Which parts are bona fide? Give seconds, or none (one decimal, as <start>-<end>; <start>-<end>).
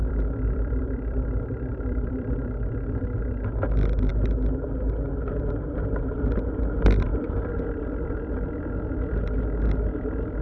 2.5-7.1; 8.1-10.4